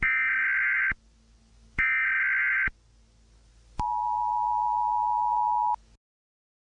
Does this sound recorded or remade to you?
recorded